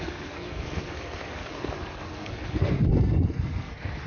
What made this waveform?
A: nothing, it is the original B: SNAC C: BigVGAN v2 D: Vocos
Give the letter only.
B